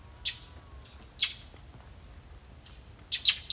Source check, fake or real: real